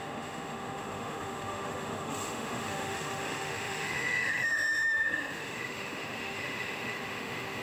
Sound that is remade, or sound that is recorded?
remade